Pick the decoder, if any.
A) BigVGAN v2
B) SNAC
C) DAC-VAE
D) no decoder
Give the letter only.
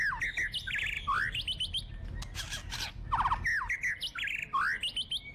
D